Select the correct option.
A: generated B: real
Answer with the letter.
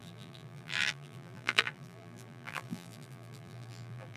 A